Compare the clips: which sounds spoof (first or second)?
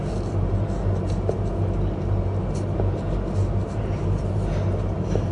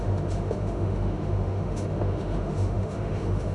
second